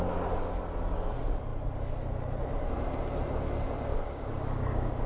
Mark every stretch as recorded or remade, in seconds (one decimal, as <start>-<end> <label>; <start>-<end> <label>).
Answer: 0.0-3.9 recorded; 3.9-5.1 remade